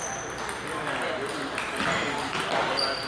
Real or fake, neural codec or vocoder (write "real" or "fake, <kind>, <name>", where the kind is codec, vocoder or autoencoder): real